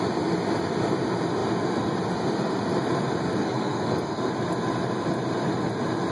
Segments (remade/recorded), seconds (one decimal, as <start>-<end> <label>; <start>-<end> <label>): 0.0-3.4 recorded; 3.4-4.3 remade; 4.3-6.1 recorded